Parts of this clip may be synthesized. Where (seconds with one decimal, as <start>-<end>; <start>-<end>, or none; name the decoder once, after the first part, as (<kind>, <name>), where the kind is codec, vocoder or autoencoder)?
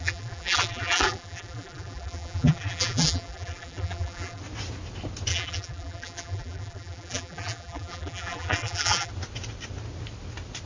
0.0-4.4 (vocoder, BigVGAN v2); 5.3-9.1